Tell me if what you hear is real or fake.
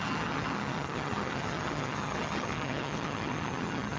fake